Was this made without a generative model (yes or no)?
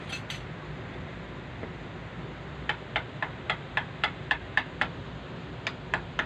yes